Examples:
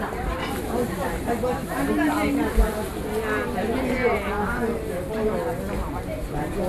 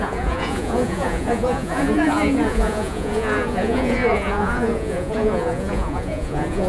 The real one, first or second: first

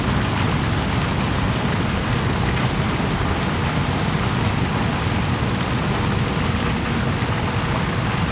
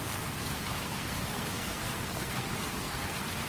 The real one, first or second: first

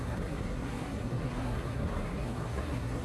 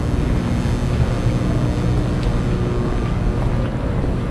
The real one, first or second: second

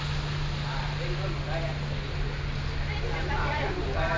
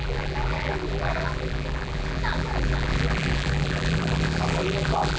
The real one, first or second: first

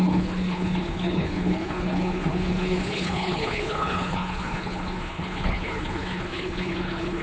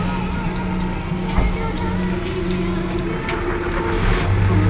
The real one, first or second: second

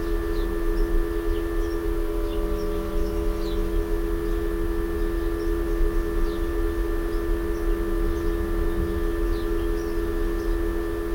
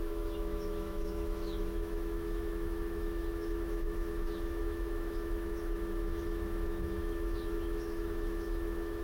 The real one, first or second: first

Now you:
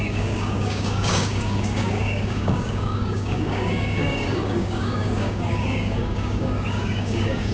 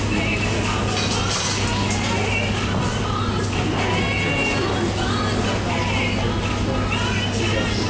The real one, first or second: second